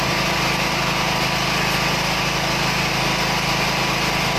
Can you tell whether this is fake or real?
real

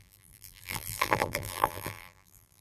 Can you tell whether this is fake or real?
fake